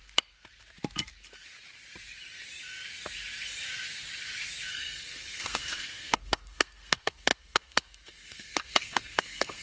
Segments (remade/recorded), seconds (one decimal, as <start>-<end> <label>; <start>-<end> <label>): 0.0-4.7 recorded; 4.7-9.6 remade